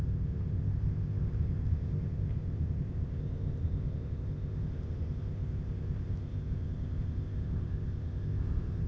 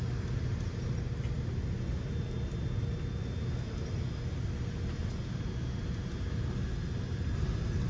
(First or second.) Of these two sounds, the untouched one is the second